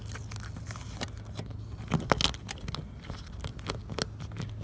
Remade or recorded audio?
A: recorded